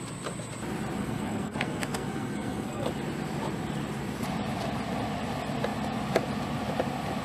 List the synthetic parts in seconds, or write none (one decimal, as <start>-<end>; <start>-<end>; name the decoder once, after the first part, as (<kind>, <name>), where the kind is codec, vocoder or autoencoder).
1.0-2.9 (codec, SNAC)